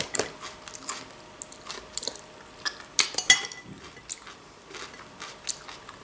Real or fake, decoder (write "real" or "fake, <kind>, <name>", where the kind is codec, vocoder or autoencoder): real